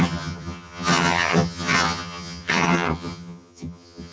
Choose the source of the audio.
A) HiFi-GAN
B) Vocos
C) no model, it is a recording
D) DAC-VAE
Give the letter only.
A